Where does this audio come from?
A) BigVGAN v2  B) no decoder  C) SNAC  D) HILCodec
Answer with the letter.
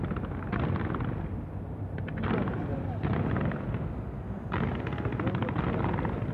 B